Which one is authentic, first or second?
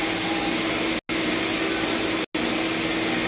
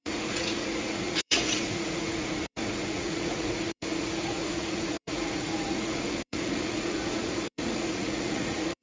first